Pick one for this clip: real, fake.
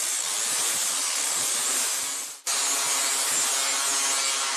real